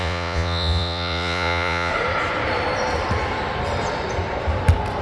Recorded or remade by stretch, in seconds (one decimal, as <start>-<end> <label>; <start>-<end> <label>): 0.0-1.9 remade; 1.9-5.0 recorded